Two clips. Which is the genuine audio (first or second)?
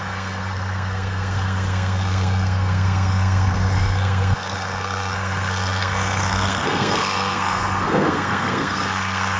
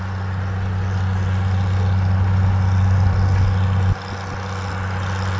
second